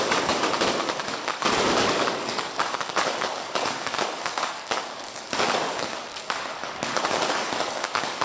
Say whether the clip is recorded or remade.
remade